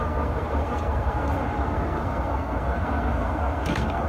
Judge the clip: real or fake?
fake